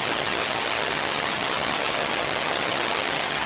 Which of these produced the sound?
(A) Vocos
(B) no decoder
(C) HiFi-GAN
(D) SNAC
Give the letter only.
C